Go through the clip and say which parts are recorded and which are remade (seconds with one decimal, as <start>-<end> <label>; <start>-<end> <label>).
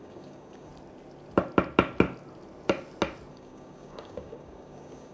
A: 0.0-0.7 remade; 0.7-3.3 recorded; 3.3-5.1 remade